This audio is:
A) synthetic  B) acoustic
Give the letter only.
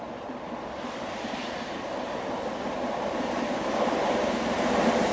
B